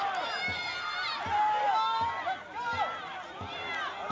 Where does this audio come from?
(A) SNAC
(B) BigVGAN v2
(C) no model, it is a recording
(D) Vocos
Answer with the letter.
C